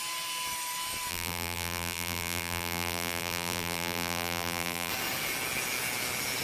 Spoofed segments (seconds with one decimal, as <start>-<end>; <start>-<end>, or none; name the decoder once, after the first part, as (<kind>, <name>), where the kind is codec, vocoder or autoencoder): 1.1-4.9 (vocoder, BigVGAN v2)